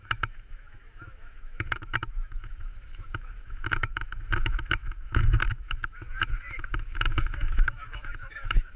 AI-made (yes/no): yes